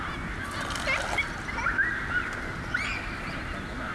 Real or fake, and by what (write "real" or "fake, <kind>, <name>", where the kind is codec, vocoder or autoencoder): real